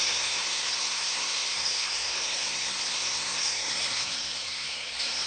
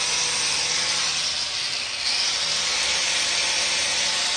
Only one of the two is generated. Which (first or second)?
first